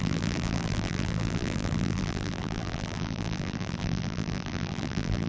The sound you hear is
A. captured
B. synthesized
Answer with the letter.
B